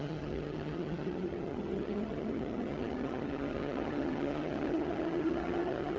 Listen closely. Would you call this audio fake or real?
fake